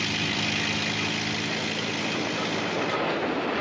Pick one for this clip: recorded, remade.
recorded